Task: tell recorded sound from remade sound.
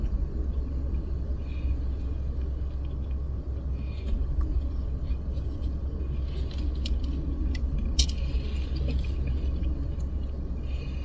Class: recorded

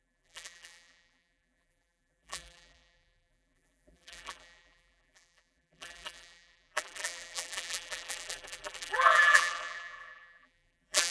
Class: remade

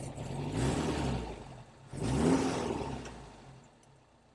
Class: recorded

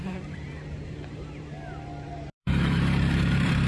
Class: remade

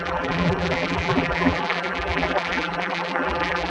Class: remade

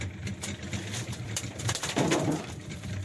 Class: remade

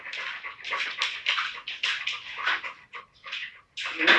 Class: remade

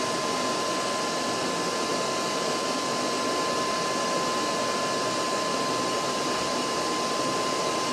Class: recorded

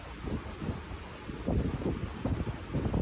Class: recorded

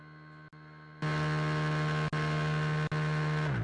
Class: recorded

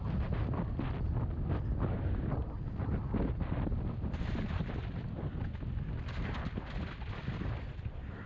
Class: recorded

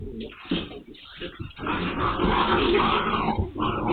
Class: recorded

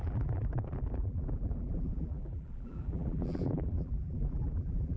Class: remade